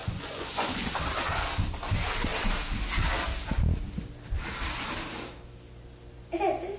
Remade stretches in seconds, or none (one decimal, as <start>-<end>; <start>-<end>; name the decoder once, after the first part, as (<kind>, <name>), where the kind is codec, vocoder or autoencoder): 0.0-0.9 (vocoder, Vocos)